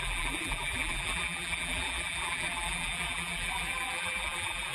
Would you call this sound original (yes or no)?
no